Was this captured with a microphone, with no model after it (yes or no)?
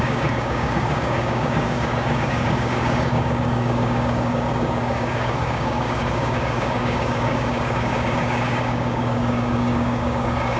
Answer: no